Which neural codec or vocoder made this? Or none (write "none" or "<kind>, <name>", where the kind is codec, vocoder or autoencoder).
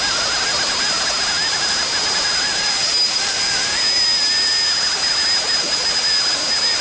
none